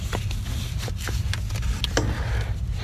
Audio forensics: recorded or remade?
recorded